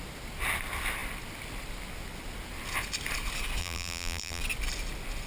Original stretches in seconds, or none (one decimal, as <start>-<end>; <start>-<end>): 0.0-3.6; 4.4-5.3